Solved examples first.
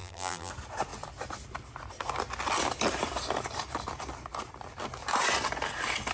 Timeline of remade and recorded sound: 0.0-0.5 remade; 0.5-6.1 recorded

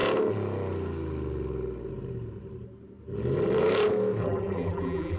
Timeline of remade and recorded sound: 0.0-4.2 recorded; 4.2-5.2 remade